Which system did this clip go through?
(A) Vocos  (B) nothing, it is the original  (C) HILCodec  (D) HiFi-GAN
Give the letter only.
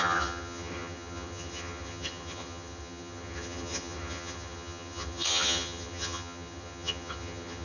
D